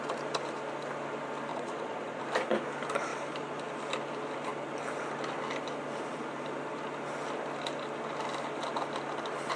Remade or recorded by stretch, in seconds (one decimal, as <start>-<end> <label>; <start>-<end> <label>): 0.0-1.5 recorded; 1.5-2.2 remade; 2.2-9.6 recorded